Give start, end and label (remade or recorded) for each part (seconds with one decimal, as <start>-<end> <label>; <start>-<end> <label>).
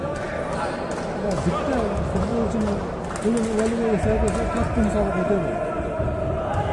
0.0-6.7 recorded